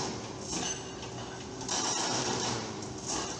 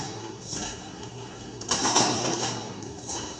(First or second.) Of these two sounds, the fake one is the second